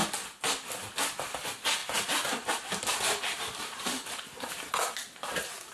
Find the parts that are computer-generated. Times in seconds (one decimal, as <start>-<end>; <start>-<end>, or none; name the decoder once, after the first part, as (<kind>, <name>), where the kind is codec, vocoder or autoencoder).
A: none